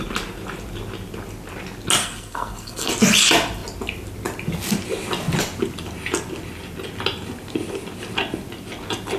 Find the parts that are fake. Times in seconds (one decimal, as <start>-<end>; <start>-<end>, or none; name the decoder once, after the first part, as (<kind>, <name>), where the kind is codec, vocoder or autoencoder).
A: 2.0-2.9 (codec, SNAC)